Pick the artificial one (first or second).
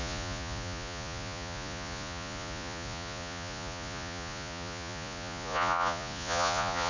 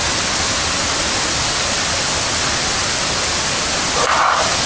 first